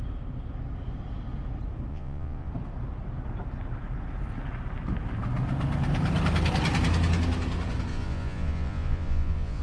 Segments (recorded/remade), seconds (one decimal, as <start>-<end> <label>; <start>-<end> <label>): 0.0-1.9 recorded; 1.9-2.5 remade; 2.5-7.9 recorded; 7.9-9.6 remade